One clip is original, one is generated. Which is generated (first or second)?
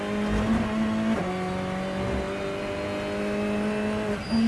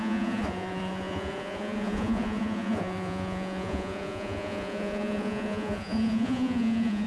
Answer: second